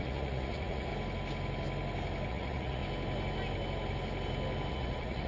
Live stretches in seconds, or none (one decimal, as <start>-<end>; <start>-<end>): 0.9-2.3; 2.8-4.7